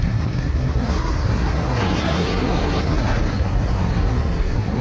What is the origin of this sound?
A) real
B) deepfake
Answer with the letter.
B